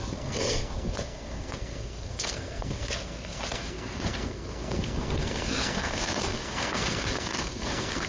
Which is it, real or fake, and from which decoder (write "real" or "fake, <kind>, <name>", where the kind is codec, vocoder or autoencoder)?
fake, codec, SNAC